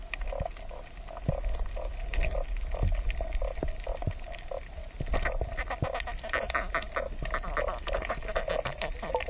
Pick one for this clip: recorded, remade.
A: recorded